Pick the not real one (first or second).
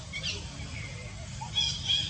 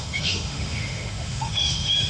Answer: second